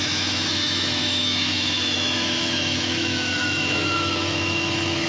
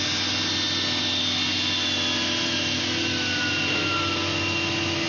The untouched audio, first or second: second